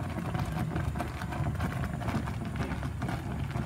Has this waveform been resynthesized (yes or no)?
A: no